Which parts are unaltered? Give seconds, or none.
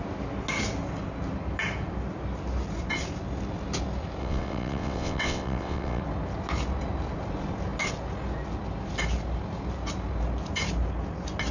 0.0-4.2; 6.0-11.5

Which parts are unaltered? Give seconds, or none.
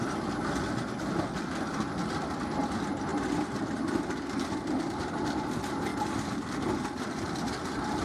0.0-3.1; 4.0-5.9; 7.2-8.0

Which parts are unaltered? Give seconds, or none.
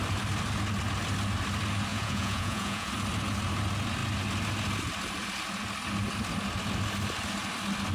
0.0-1.9; 2.9-7.9